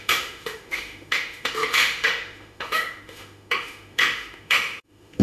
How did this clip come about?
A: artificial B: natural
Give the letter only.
A